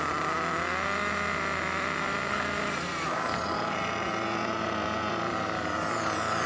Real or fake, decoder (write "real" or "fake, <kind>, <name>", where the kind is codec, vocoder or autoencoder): real